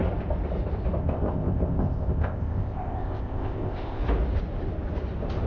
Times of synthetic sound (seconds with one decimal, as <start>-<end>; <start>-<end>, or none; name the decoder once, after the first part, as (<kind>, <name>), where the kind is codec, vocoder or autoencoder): 1.0-4.0 (codec, ZipCodec)